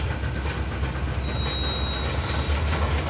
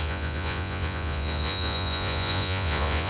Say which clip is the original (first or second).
first